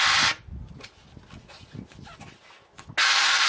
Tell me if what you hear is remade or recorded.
recorded